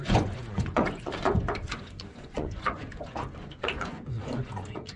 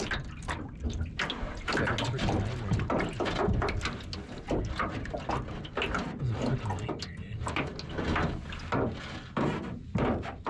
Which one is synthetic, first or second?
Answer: first